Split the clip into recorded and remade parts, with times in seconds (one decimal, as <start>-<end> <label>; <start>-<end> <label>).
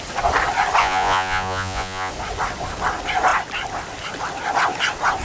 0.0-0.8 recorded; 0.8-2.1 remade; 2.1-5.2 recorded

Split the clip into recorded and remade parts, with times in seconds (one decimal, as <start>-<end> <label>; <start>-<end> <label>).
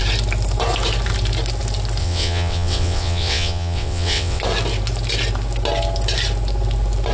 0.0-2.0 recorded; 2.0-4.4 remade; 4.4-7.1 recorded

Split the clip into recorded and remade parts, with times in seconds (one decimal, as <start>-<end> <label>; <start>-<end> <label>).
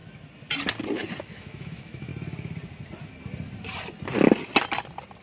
0.0-1.2 recorded; 1.2-2.1 remade; 2.1-5.2 recorded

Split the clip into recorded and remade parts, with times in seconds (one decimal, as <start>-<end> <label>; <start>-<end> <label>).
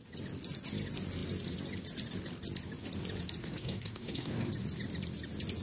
0.0-3.4 recorded; 3.4-4.5 remade; 4.5-5.6 recorded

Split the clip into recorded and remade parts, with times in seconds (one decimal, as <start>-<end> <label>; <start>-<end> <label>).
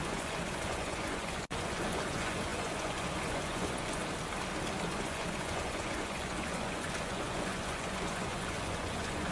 0.0-4.0 remade; 4.0-4.9 recorded; 4.9-9.3 remade